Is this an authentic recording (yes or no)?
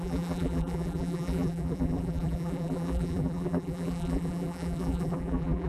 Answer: no